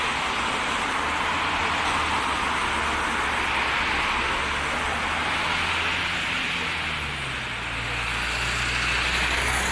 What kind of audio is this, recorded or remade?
recorded